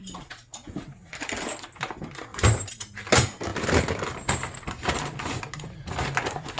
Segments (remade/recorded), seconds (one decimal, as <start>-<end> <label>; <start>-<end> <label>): 0.0-1.5 remade; 1.5-2.3 recorded; 2.3-3.1 remade; 3.1-6.6 recorded